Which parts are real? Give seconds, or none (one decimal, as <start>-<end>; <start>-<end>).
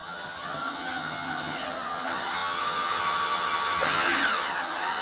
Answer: none